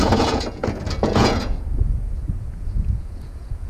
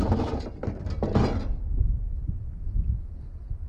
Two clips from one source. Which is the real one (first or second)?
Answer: second